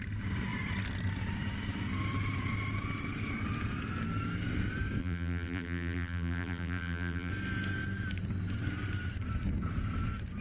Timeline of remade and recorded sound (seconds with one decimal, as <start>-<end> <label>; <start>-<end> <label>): 0.0-5.0 recorded; 5.0-7.3 remade; 7.3-10.4 recorded